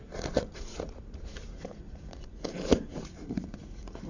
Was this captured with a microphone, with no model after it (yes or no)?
no